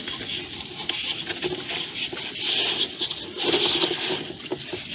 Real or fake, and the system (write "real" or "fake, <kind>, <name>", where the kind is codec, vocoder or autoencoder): real